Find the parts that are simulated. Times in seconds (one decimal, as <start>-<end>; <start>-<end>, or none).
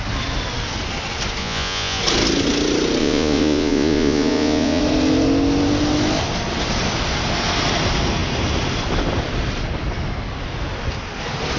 1.4-2.0; 3.0-4.8